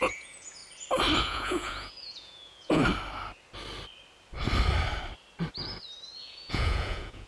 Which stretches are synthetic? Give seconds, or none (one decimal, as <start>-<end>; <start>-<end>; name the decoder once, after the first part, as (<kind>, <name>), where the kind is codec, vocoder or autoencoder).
0.0-0.6 (vocoder, Vocos); 1.2-2.8; 6.2-7.3